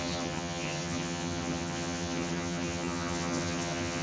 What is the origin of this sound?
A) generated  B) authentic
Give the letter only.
A